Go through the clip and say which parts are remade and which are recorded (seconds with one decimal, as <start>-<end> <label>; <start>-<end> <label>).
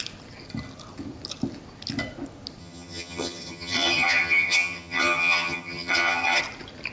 0.0-2.6 recorded; 2.6-6.4 remade; 6.4-6.9 recorded